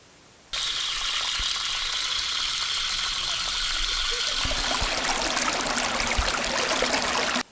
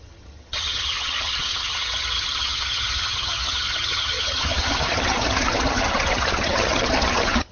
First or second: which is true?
first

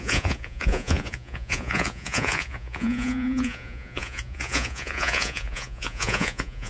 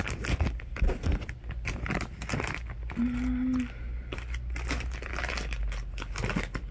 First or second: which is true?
second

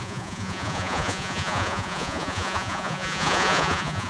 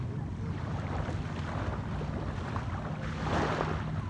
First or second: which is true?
second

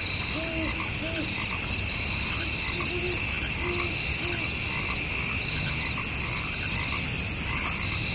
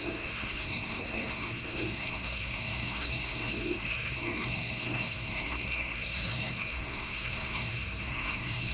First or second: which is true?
first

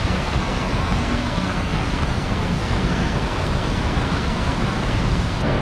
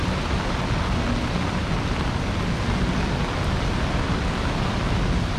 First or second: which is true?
second